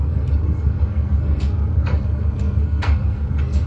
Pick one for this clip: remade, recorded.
remade